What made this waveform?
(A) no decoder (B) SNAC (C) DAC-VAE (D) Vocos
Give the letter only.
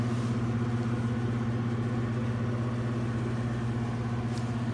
A